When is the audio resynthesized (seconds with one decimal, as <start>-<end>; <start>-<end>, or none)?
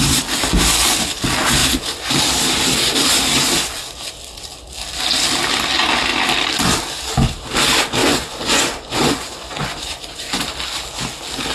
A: 8.0-10.5